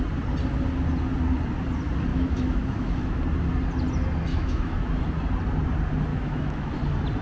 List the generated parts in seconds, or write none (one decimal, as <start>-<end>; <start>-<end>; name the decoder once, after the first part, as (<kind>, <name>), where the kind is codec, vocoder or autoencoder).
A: 2.1-3.2 (autoencoder, DAC-VAE); 4.3-4.9; 6.1-6.7